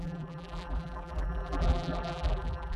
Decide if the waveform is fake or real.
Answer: fake